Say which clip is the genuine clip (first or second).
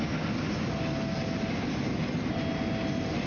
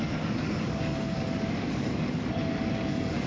first